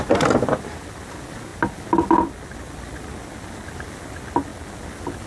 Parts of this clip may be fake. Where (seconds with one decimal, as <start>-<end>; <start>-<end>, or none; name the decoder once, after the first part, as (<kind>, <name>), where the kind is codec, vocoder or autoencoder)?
none